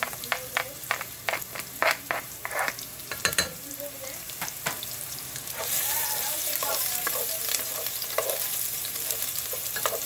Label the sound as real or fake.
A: fake